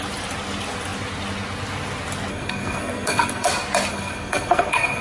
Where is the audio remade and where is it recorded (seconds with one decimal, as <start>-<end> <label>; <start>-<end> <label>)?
0.0-2.3 recorded; 2.3-3.5 remade; 3.5-3.9 recorded; 3.9-5.0 remade